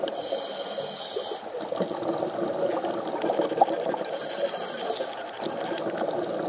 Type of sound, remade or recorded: recorded